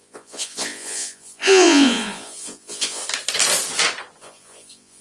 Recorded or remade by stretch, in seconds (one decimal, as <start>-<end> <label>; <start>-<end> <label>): 0.0-3.0 remade; 3.0-4.2 recorded; 4.2-5.0 remade